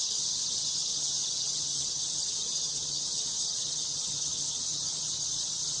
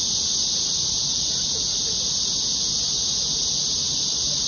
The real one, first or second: second